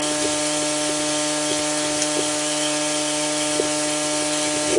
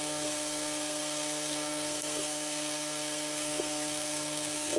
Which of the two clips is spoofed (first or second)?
second